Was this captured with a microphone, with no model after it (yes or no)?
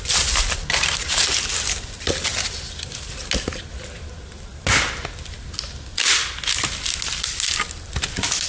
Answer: yes